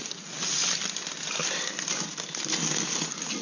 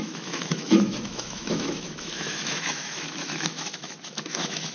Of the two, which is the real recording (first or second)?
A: first